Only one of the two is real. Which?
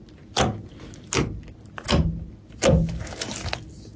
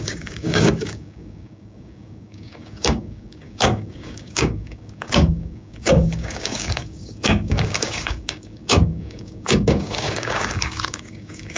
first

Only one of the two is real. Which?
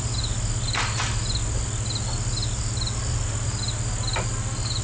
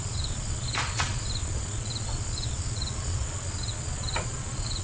first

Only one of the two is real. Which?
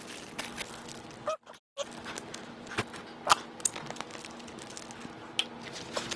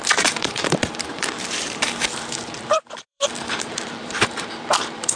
first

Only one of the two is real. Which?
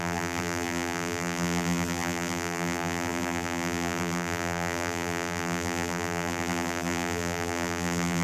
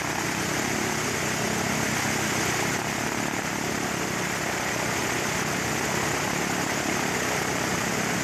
second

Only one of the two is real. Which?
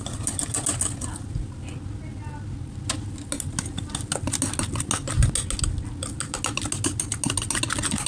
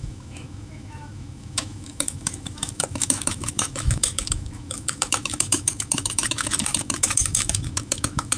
first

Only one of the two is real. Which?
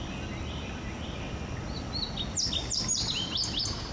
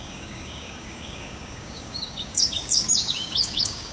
first